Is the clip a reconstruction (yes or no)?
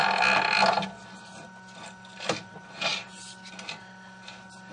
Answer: no